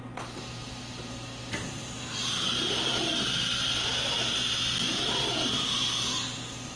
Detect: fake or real real